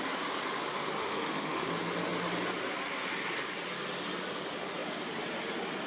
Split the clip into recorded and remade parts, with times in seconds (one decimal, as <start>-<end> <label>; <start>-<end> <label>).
0.0-1.0 recorded; 1.0-1.7 remade; 1.7-5.9 recorded